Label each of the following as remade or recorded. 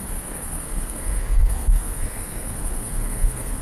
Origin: remade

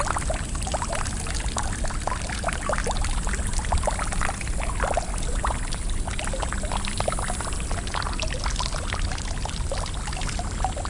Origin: recorded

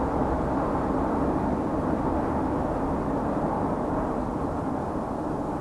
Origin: recorded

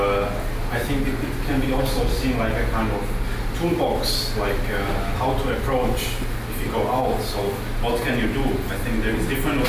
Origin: recorded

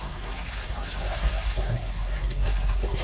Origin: remade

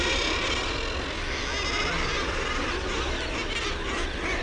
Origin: recorded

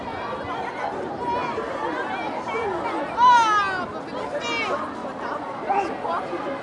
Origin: recorded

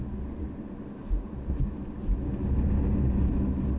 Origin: recorded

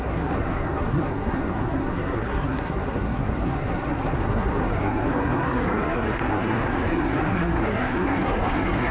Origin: remade